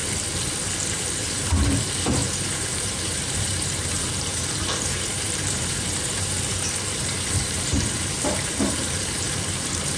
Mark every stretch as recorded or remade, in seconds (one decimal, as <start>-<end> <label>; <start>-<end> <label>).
0.0-0.9 recorded; 0.9-10.0 remade